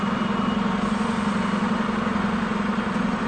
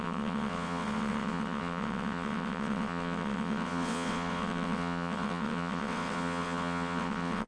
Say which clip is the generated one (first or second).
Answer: second